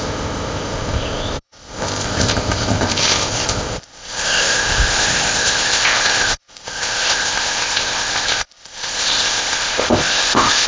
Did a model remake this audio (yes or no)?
yes